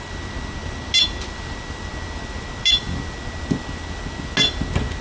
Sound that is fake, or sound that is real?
real